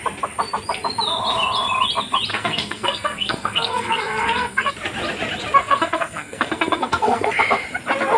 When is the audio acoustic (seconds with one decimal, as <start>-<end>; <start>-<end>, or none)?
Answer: 0.0-2.3; 4.7-5.6; 7.3-8.2